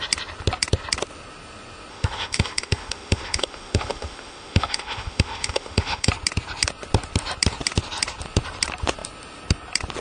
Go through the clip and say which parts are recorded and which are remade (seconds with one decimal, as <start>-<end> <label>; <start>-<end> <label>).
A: 0.0-1.9 recorded; 1.9-6.1 remade; 6.1-10.0 recorded